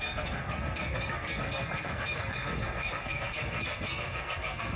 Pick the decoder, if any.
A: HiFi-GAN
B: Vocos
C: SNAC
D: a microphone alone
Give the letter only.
C